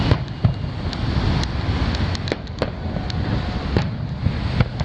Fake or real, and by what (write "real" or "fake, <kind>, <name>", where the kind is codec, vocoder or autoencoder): real